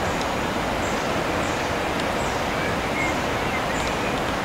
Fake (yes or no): no